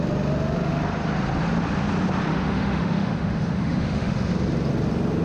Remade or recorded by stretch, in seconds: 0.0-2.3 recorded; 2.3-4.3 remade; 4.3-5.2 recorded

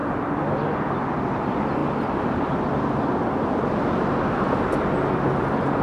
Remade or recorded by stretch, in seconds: 0.0-5.8 recorded

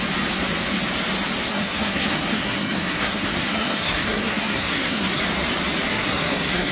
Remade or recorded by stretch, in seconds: 0.0-1.5 recorded; 1.5-5.2 remade; 5.2-5.9 recorded; 5.9-6.7 remade

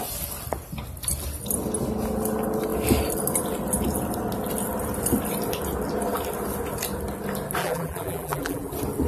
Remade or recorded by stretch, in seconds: 0.0-7.6 recorded; 7.6-8.7 remade; 8.7-9.1 recorded

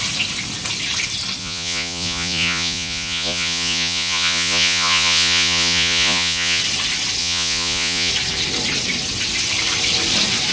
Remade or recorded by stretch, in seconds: 0.0-1.4 recorded; 1.4-6.6 remade; 6.6-7.2 recorded; 7.2-8.1 remade; 8.1-10.5 recorded